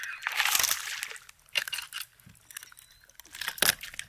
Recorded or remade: recorded